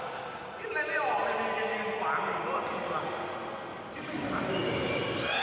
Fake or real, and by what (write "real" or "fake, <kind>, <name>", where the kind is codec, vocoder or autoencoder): real